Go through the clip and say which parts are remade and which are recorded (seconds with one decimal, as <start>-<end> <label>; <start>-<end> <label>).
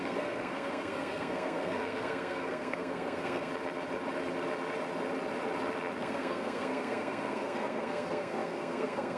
0.0-3.5 remade; 3.5-6.0 recorded; 6.0-9.2 remade